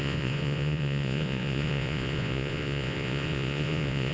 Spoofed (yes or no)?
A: yes